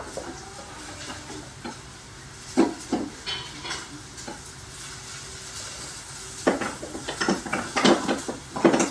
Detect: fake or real real